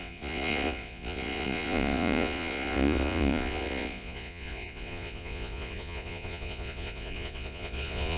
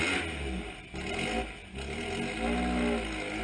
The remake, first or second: first